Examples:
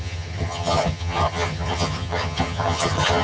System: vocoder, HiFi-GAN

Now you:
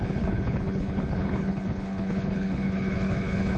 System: codec, HILCodec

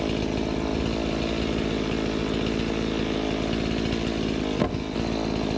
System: none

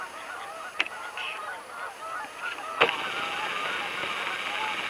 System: none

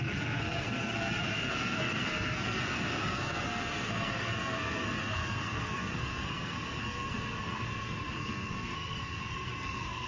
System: codec, SNAC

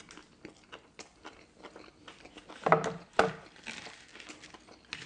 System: none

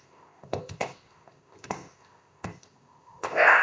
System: codec, ZipCodec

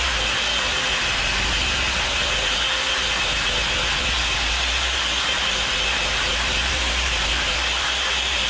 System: none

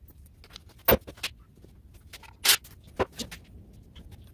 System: none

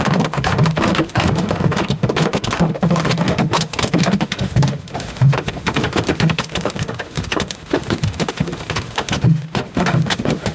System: autoencoder, DAC-VAE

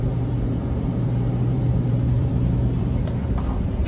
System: vocoder, BigVGAN v2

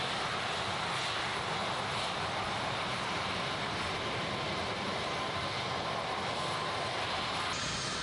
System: none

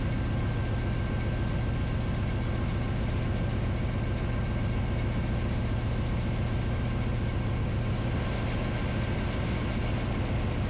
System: none